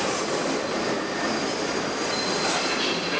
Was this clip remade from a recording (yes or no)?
no